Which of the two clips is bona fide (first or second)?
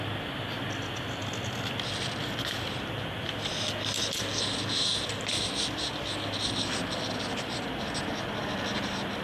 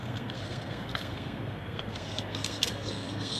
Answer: first